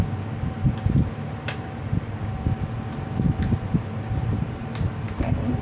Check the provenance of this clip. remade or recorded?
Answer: recorded